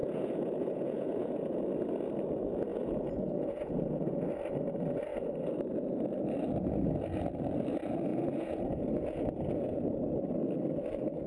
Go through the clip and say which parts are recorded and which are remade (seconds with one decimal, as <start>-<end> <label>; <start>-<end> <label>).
0.0-1.6 remade; 1.6-2.7 recorded; 2.7-4.3 remade; 4.3-8.1 recorded; 8.1-9.9 remade; 9.9-11.3 recorded